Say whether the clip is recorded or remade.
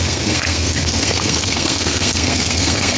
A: remade